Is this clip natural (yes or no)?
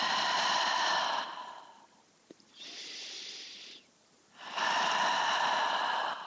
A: no